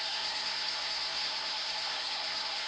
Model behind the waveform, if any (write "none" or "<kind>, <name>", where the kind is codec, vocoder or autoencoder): codec, SNAC